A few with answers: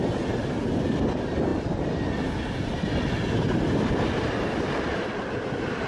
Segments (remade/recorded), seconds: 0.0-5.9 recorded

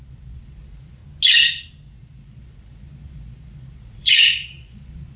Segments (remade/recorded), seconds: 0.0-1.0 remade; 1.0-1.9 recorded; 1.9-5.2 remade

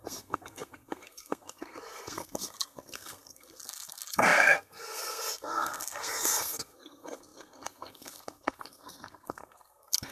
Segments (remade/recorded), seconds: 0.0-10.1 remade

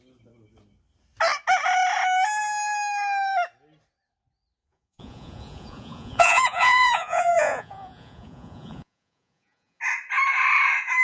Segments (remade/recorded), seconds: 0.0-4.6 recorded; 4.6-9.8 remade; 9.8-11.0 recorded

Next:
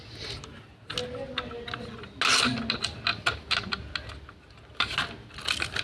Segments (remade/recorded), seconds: 0.0-5.8 recorded

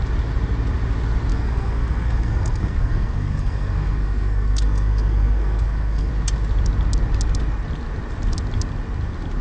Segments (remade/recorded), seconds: 0.0-1.3 recorded; 1.3-6.1 remade; 6.1-9.4 recorded

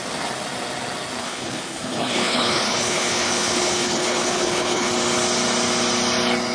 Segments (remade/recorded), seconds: 0.0-1.2 recorded; 1.2-4.9 remade; 4.9-6.5 recorded

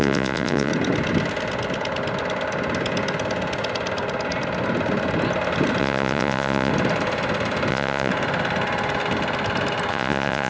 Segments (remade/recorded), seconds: 0.0-0.7 remade; 0.7-5.8 recorded; 5.8-6.7 remade; 6.7-7.7 recorded; 7.7-8.1 remade; 8.1-9.9 recorded; 9.9-10.5 remade